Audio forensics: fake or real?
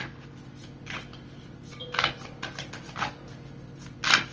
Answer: real